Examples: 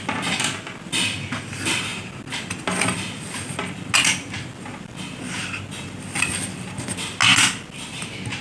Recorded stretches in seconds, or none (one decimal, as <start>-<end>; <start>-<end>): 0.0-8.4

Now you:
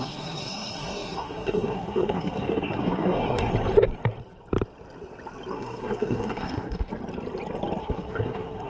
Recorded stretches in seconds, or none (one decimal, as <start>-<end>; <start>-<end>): 3.5-5.5; 6.9-7.8

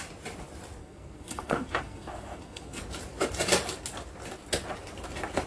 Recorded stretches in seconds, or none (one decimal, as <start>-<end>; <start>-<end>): 0.0-0.8; 2.8-5.5